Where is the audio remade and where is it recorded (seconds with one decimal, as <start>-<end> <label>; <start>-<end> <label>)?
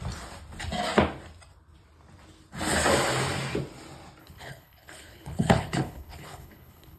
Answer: 0.0-4.2 recorded; 4.2-7.0 remade